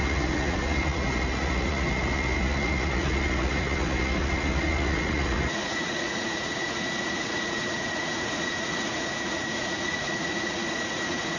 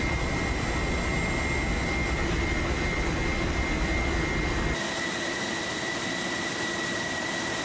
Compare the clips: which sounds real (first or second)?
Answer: second